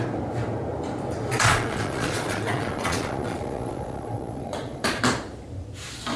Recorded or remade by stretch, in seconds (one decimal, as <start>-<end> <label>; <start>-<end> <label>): 0.0-1.3 recorded; 1.3-5.0 remade; 5.0-6.2 recorded